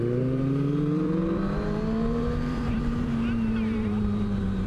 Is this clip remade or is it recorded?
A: remade